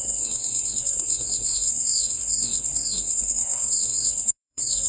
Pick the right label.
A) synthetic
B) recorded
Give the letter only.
A